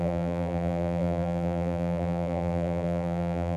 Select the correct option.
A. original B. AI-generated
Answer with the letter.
B